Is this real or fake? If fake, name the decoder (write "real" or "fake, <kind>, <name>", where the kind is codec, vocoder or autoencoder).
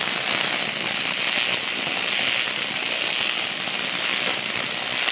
real